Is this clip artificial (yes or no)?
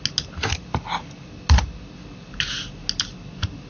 no